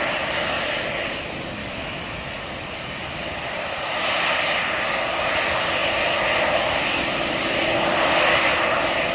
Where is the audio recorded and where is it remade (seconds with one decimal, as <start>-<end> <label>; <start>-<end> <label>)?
0.0-1.6 recorded; 1.6-2.4 remade; 2.4-9.1 recorded